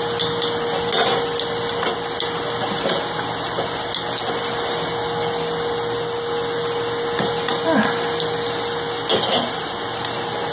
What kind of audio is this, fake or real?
real